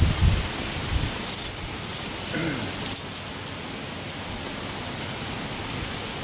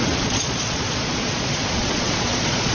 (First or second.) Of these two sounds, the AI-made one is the second